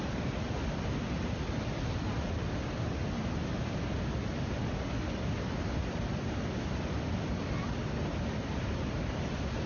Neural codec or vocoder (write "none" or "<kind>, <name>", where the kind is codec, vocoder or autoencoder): none